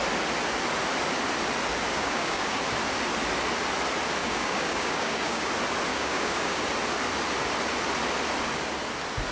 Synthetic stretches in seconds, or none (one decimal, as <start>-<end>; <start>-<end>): 1.9-2.6; 4.2-5.5; 5.9-6.6